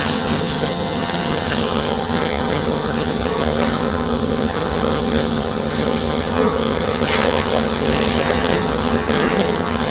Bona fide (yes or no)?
no